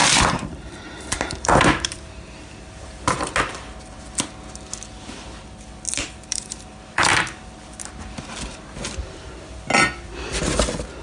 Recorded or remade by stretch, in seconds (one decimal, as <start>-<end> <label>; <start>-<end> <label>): 0.0-2.9 remade; 2.9-6.0 recorded; 6.0-7.9 remade; 7.9-11.0 recorded